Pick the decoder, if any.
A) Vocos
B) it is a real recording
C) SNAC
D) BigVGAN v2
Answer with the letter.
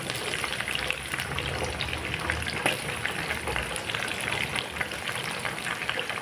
B